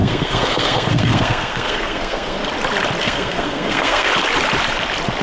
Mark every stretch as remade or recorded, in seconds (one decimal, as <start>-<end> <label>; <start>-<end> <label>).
0.0-2.4 remade; 2.4-3.0 recorded; 3.0-4.1 remade; 4.1-5.2 recorded